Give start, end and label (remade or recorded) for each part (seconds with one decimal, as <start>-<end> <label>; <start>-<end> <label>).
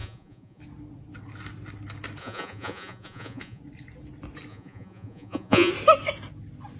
0.0-0.6 remade; 0.6-2.2 recorded; 2.2-3.6 remade; 3.6-4.5 recorded; 4.5-5.7 remade; 5.7-6.8 recorded